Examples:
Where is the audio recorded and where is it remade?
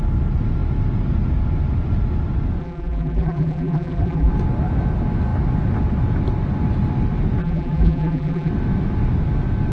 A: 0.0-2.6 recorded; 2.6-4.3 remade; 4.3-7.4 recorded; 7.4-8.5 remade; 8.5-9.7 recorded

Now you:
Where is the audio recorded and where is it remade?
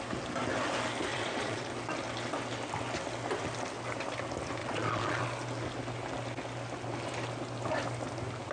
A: 0.0-1.1 recorded; 1.1-1.6 remade; 1.6-4.6 recorded; 4.6-5.2 remade; 5.2-8.5 recorded